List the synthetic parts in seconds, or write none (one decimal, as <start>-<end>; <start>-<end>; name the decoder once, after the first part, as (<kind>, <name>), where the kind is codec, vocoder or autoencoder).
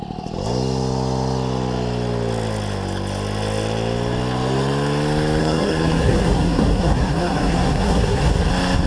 5.4-8.5 (codec, SNAC)